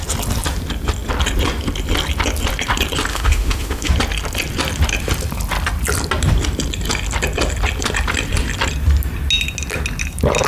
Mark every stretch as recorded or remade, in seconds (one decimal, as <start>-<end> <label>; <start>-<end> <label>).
0.0-3.1 recorded; 3.1-3.9 remade; 3.9-10.5 recorded